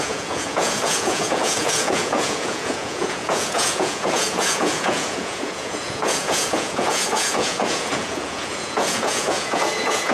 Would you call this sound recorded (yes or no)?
no